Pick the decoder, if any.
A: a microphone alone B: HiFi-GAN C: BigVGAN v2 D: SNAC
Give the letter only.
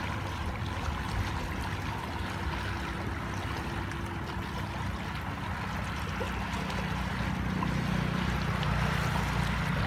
A